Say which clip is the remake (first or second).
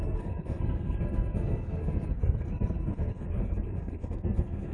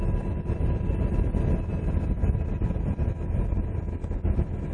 first